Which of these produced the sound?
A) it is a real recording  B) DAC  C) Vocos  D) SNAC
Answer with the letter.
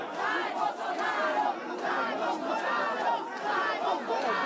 A